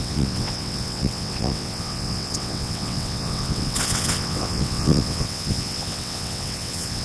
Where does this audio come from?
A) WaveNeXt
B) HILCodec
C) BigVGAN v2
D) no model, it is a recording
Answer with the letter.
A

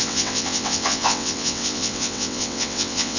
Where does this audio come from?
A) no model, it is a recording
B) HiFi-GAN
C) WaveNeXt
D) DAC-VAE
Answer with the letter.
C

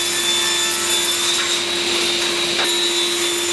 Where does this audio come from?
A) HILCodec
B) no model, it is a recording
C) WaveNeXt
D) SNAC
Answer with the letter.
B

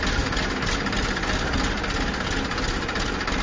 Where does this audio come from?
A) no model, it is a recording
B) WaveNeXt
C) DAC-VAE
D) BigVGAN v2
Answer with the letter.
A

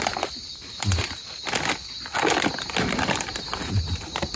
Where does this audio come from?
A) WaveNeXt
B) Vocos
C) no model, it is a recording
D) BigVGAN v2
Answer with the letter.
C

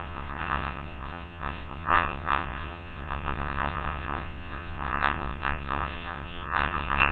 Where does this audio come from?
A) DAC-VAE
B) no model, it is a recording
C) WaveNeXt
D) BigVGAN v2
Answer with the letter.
C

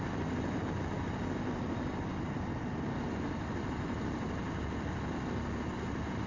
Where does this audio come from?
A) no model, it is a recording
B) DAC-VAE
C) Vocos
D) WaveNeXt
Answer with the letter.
A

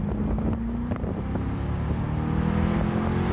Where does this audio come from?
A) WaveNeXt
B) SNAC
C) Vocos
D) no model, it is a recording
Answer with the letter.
D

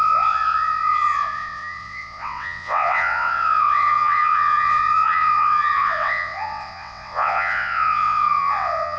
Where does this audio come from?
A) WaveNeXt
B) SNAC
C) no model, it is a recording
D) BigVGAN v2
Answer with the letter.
A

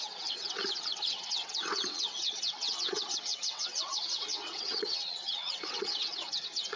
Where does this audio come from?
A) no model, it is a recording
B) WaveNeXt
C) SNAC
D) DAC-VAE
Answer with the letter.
B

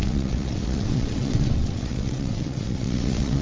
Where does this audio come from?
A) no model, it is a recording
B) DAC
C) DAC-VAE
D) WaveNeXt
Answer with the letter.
D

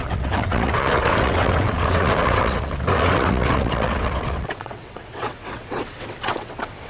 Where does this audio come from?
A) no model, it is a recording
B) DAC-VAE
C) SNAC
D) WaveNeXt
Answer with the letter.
D